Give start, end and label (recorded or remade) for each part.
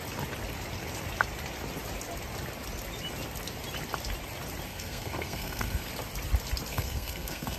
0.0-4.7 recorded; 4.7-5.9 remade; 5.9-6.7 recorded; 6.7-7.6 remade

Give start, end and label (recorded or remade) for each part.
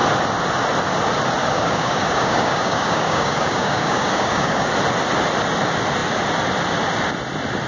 0.0-1.4 recorded; 1.4-4.7 remade; 4.7-7.7 recorded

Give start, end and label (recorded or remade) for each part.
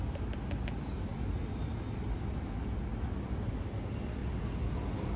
0.0-5.2 recorded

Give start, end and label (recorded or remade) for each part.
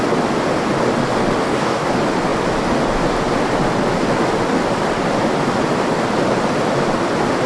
0.0-1.4 recorded; 1.4-1.9 remade; 1.9-7.5 recorded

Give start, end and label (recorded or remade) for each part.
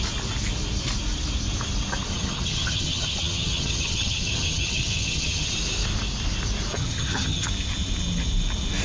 0.0-2.1 recorded; 2.1-5.5 remade; 5.5-6.7 recorded; 6.7-7.5 remade; 7.5-8.8 recorded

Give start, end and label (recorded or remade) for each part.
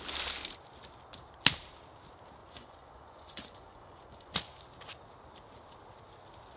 0.0-2.4 recorded; 2.4-4.3 remade; 4.3-6.6 recorded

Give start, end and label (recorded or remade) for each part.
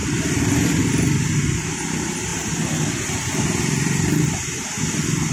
0.0-0.8 remade; 0.8-5.3 recorded